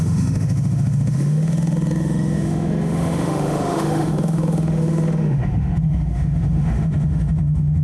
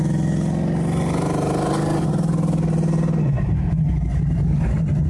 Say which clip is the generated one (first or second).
first